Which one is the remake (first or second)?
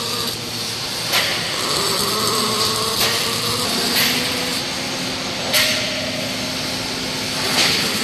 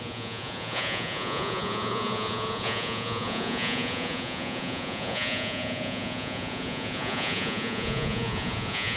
second